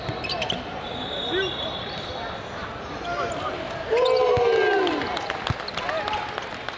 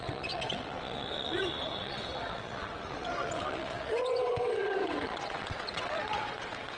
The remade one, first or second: second